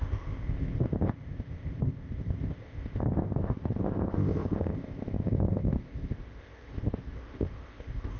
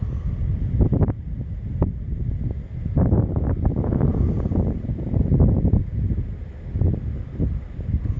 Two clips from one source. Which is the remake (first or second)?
first